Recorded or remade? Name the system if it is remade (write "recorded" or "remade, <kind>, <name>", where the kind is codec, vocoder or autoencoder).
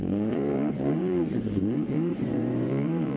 remade, vocoder, Vocos